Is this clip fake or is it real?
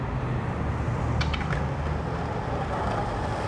real